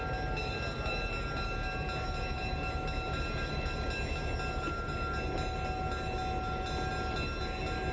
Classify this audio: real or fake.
real